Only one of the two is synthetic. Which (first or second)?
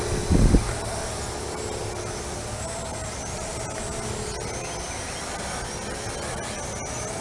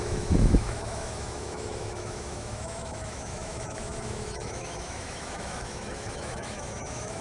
second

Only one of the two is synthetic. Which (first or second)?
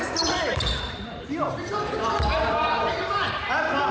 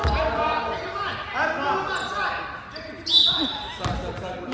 first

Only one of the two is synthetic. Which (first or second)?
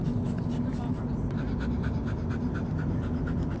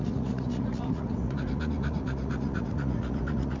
second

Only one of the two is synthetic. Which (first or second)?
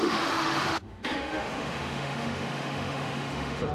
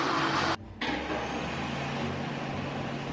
first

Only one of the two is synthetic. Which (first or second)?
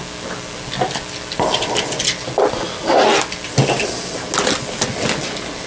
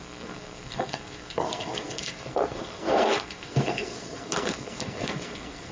second